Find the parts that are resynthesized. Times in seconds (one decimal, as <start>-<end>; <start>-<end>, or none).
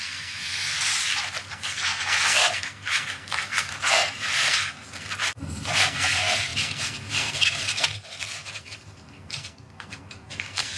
0.0-0.9; 1.5-10.8